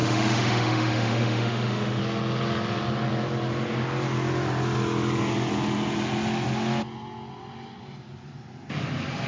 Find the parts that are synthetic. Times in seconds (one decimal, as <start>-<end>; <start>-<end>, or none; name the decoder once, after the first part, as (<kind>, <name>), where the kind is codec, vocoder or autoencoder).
0.0-2.0 (autoencoder, DAC-VAE)